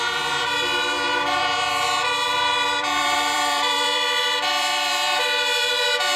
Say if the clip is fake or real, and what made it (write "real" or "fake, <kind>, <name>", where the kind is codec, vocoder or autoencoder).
fake, vocoder, BigVGAN v2